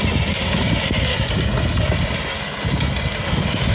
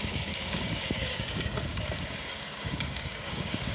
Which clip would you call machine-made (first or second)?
second